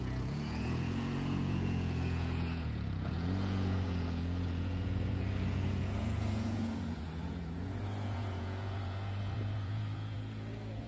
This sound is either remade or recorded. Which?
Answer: remade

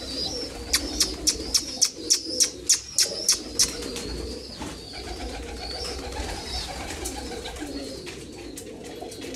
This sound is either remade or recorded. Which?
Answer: recorded